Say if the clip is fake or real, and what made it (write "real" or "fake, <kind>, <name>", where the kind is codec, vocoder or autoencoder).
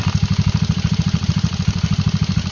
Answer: real